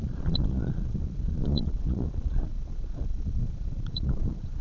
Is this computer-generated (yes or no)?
yes